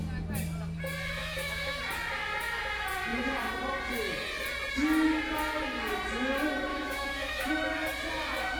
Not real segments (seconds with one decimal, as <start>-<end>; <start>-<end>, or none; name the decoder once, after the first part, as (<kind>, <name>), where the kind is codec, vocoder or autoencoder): 1.2-1.8 (autoencoder, DAC-VAE); 6.7-7.5